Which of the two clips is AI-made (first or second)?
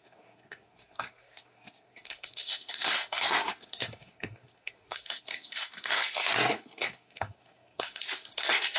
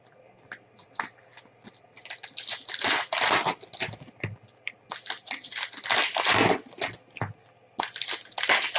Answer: first